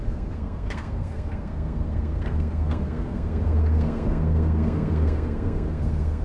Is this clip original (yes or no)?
no